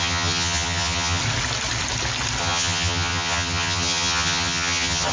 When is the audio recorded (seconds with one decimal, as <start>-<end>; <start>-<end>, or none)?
1.2-2.4

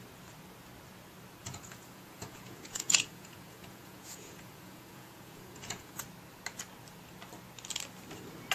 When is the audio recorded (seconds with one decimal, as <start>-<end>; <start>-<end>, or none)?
0.0-1.4; 6.0-8.5